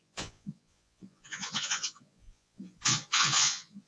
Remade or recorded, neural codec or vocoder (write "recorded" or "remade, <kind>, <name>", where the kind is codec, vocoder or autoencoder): remade, vocoder, Vocos